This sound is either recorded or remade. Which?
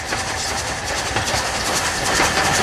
recorded